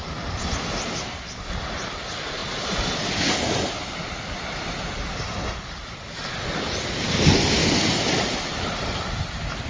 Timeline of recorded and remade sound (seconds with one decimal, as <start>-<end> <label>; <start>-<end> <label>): 0.0-9.7 recorded